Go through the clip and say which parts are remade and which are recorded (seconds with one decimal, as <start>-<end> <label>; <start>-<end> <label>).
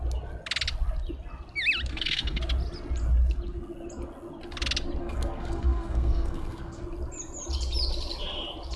0.0-1.9 recorded; 1.9-2.4 remade; 2.4-5.0 recorded; 5.0-6.8 remade; 6.8-8.8 recorded